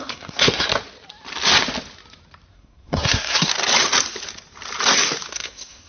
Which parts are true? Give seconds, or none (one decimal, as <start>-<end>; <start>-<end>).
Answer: 0.7-2.5; 3.5-5.3